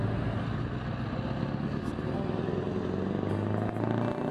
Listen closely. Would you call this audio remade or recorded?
recorded